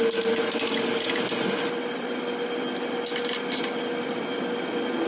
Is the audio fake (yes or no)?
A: no